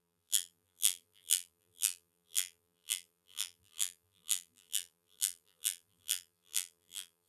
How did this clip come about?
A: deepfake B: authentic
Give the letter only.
A